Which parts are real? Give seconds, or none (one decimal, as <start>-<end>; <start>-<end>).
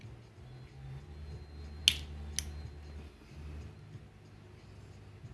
0.0-5.3